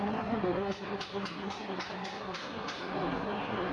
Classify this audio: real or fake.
fake